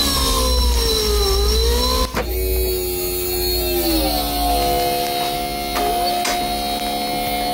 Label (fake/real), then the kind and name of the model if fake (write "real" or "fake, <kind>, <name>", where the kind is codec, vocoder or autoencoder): real